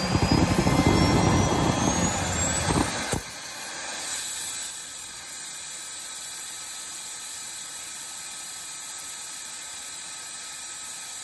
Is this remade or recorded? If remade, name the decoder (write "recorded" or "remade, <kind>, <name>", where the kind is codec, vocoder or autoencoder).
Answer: recorded